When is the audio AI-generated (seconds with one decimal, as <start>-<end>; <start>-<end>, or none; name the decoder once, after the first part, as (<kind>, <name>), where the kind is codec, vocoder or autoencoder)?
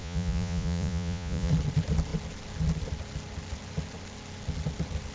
0.0-1.5 (vocoder, Vocos)